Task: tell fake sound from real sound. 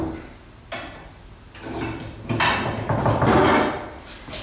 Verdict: real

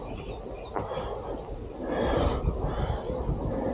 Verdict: real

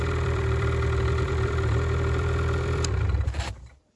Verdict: fake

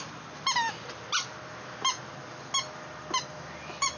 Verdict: real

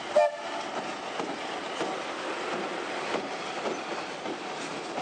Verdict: real